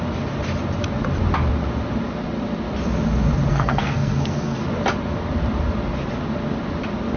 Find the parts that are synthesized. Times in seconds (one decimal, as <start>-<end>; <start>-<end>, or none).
3.5-4.6

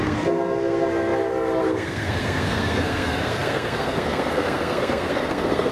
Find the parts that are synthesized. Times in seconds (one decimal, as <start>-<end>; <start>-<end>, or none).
0.0-5.7

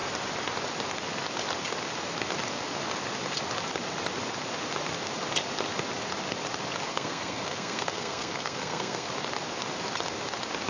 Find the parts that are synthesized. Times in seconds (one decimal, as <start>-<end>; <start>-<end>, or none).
6.9-9.1

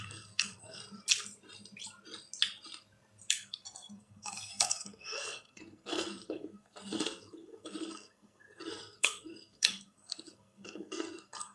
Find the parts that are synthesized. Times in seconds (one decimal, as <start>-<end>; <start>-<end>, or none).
0.0-0.8; 3.3-11.5

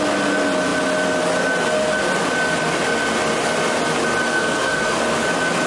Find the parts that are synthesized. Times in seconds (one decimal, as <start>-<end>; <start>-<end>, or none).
4.3-5.0

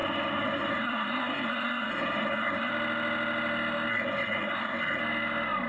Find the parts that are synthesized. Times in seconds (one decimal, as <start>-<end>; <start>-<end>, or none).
0.0-2.7; 3.9-5.0

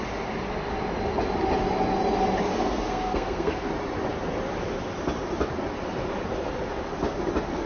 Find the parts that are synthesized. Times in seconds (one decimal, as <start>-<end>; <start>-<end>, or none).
2.5-3.7

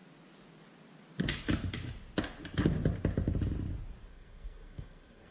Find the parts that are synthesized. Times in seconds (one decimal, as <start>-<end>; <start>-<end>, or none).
4.0-5.3